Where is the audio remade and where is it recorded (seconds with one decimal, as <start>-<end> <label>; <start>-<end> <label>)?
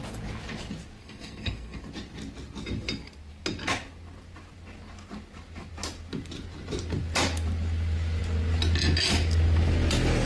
0.0-1.0 recorded; 1.0-1.8 remade; 1.8-10.3 recorded